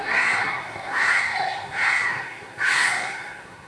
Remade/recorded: remade